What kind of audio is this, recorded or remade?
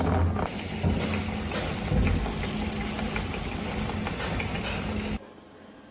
recorded